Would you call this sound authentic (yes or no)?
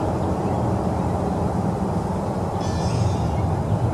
no